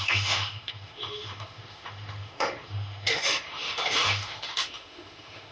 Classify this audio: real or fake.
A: fake